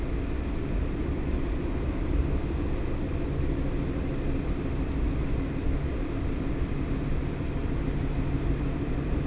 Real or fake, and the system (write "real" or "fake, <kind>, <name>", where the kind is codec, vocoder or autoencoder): real